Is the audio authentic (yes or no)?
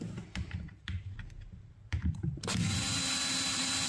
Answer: no